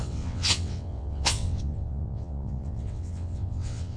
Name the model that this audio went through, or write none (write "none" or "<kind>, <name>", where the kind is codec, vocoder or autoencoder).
vocoder, WaveNeXt